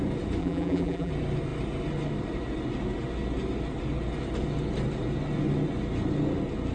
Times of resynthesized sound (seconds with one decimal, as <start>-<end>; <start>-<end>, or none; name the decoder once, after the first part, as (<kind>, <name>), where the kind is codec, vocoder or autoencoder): 0.4-1.1 (vocoder, BigVGAN v2)